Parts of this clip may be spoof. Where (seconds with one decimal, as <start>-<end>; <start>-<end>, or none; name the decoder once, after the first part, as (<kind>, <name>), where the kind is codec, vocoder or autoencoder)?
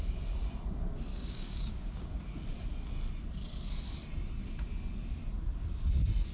1.1-2.2 (codec, DAC)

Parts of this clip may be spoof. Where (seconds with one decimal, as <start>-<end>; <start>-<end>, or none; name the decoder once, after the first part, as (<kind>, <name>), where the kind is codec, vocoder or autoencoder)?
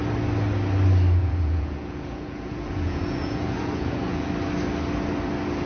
1.2-4.3 (vocoder, Vocos)